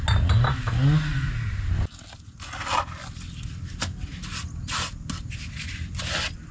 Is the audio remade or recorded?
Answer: recorded